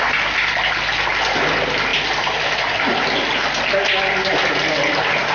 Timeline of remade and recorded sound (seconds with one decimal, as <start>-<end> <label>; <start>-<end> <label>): 0.0-5.3 recorded